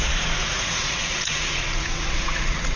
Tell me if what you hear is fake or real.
fake